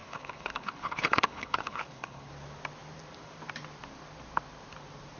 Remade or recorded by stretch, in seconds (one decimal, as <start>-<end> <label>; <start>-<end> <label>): 0.0-2.3 remade; 2.3-5.2 recorded